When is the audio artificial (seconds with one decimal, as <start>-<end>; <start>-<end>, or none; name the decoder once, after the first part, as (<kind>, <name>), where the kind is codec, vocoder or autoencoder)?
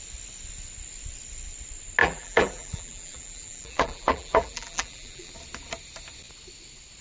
2.0-5.3 (vocoder, BigVGAN v2)